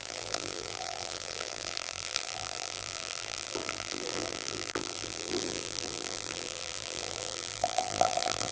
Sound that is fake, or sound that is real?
fake